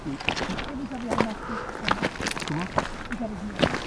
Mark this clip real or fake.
real